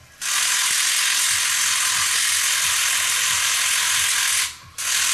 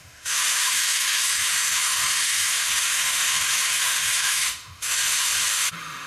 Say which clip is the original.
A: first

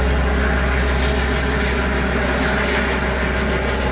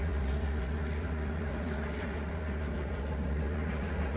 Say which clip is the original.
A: first